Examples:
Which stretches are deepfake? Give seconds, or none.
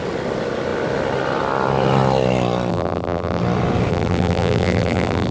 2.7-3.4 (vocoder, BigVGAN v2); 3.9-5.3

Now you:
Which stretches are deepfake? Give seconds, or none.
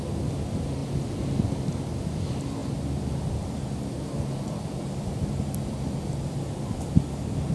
none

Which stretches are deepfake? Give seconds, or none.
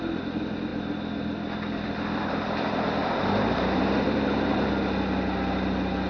3.0-4.7 (vocoder, BigVGAN v2)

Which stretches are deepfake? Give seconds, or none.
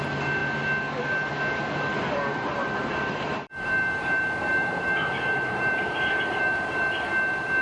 2.3-6.8 (vocoder, BigVGAN v2)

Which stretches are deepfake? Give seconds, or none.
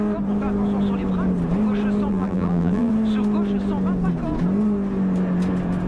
2.1-2.9 (vocoder, BigVGAN v2)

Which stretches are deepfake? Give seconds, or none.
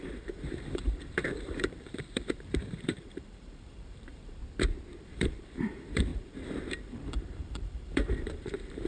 0.0-4.4 (vocoder, BigVGAN v2); 5.0-8.9